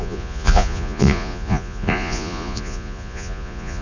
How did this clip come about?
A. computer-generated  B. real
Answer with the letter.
A